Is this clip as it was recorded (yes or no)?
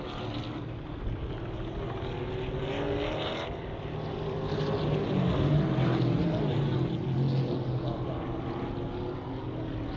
yes